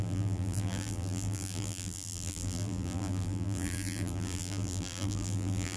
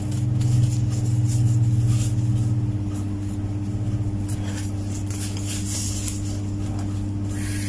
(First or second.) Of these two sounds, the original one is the second